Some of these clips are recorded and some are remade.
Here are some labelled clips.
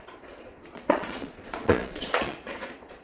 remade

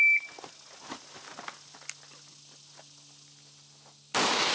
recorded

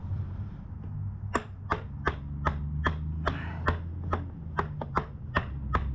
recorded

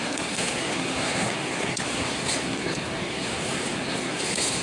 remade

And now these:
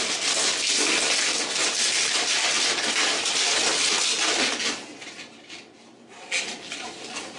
recorded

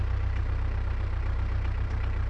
remade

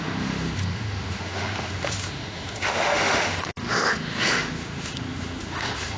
remade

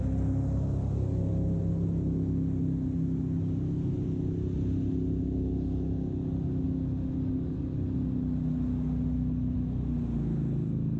recorded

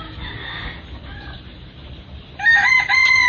recorded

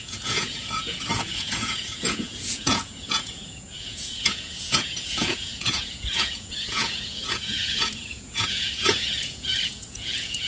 remade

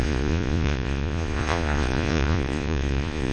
remade